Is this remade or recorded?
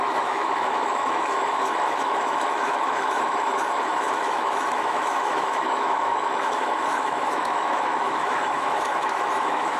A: remade